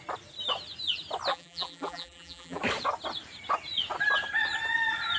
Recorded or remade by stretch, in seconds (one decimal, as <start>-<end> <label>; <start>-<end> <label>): 0.0-1.3 recorded; 1.3-2.6 remade; 2.6-5.2 recorded